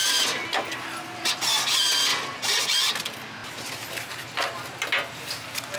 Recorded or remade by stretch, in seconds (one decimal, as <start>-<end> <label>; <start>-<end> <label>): 0.0-5.8 recorded